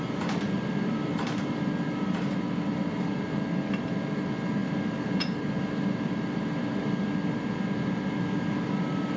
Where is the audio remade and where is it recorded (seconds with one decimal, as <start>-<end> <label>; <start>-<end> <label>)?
0.0-9.2 recorded